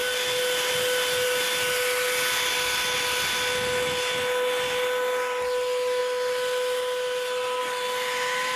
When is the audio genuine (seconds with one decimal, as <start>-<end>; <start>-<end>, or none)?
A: 0.0-8.6